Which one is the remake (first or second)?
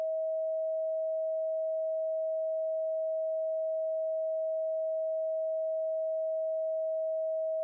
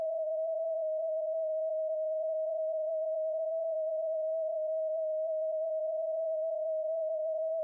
second